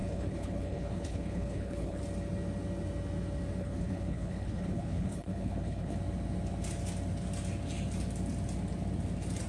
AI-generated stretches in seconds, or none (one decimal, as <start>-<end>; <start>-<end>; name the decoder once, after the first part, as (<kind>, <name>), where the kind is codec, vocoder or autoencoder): 0.0-2.0 (codec, HILCodec); 3.6-6.0